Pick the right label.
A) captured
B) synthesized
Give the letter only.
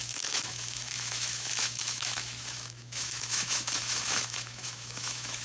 B